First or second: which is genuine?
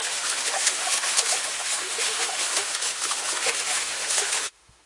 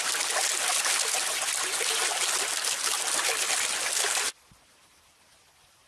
second